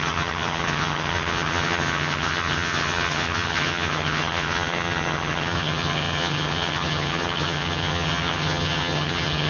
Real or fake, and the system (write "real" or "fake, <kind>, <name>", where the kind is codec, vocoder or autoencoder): fake, vocoder, HiFi-GAN